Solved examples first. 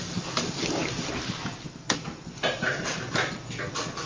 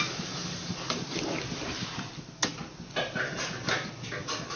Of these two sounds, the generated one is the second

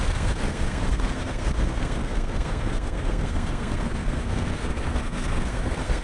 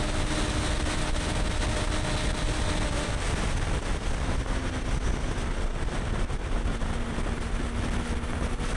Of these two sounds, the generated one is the first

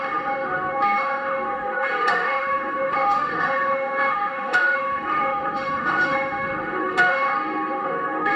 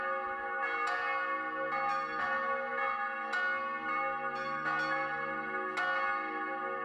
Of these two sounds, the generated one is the first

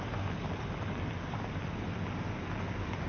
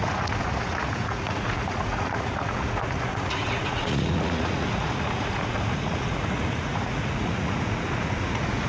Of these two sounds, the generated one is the second